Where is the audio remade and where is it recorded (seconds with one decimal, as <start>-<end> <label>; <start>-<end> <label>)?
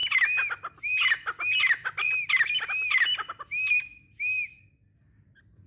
0.0-5.7 recorded